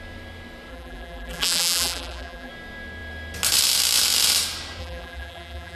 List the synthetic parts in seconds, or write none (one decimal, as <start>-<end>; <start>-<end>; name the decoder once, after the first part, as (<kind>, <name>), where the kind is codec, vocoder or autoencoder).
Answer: 0.7-2.5 (vocoder, BigVGAN v2); 4.8-5.8